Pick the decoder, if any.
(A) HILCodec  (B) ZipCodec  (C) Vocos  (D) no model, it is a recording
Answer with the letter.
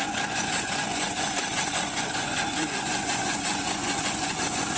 C